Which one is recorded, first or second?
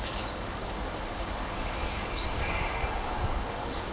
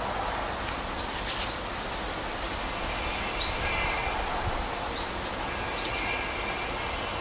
second